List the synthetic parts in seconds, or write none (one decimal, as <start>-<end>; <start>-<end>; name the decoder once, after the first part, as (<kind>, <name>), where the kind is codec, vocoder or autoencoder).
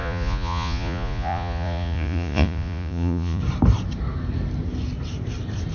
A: 0.0-3.4 (vocoder, Vocos)